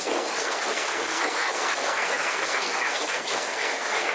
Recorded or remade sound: remade